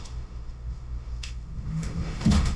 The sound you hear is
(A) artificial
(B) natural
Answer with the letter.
A